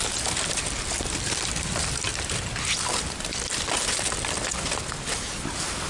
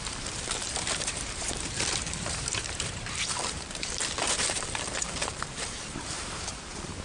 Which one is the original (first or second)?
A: first